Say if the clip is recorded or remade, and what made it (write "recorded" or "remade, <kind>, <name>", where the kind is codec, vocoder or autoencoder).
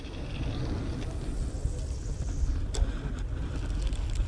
recorded